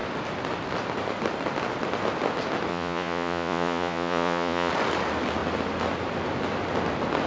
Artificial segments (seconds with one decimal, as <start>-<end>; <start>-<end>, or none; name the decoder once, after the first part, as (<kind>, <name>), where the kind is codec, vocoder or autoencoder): 2.7-4.7 (vocoder, Vocos)